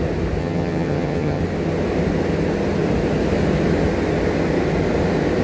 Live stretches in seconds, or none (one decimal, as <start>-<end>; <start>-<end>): 0.0-0.4; 1.4-5.4